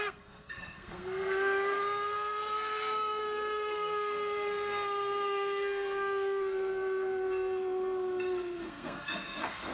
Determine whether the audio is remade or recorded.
remade